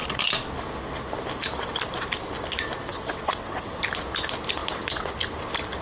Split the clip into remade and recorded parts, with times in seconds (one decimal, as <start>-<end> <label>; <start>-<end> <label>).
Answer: 0.0-2.9 recorded; 2.9-3.7 remade; 3.7-4.6 recorded; 4.6-5.1 remade; 5.1-5.8 recorded